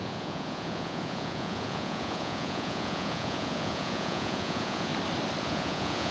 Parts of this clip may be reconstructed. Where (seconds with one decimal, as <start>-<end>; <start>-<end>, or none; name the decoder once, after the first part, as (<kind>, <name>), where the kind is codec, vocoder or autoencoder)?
0.0-4.9 (vocoder, Vocos); 5.4-6.1